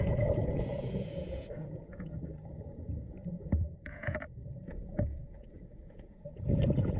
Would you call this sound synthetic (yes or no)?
yes